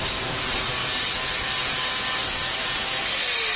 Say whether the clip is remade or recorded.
recorded